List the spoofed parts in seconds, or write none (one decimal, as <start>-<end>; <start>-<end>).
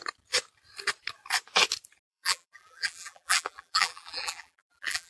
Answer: 2.1-5.1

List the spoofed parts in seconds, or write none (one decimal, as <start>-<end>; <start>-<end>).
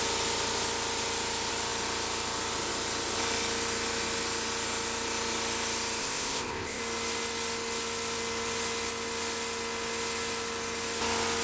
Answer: 6.0-6.8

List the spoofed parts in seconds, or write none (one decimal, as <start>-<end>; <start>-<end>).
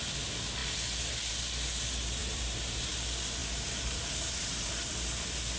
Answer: 2.2-2.9; 3.4-4.7